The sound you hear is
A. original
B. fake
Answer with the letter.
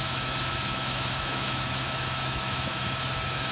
B